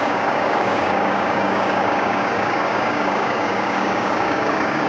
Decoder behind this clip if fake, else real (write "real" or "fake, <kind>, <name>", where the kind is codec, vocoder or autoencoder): fake, codec, DAC